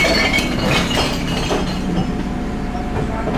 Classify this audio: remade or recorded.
recorded